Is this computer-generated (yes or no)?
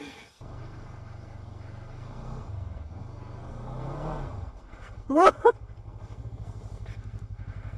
yes